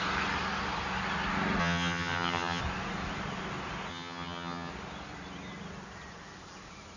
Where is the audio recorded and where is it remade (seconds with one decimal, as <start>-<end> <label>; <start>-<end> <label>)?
0.0-1.6 recorded; 1.6-2.6 remade; 2.6-3.9 recorded; 3.9-4.7 remade; 4.7-7.0 recorded